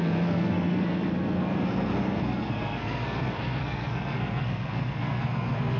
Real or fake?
fake